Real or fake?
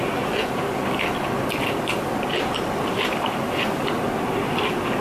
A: real